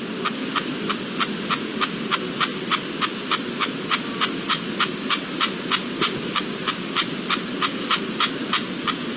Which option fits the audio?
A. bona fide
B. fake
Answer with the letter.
A